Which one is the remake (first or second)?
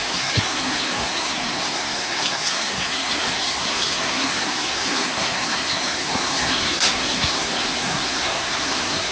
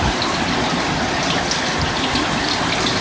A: first